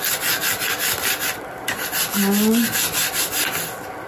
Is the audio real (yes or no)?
yes